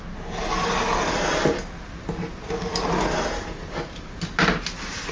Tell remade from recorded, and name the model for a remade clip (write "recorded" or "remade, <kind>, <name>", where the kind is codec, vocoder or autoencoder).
recorded